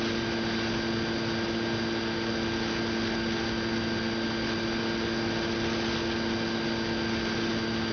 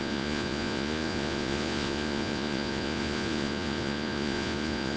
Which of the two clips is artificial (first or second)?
second